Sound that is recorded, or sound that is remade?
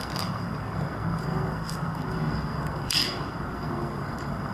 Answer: remade